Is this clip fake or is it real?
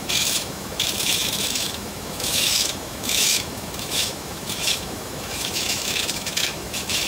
fake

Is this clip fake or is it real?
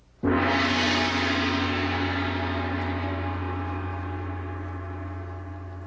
real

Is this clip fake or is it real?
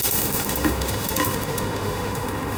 fake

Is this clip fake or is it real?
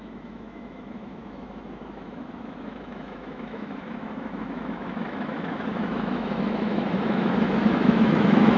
fake